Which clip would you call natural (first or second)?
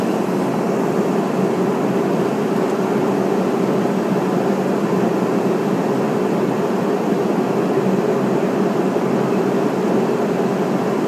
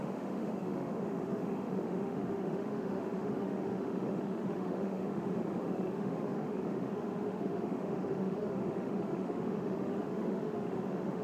first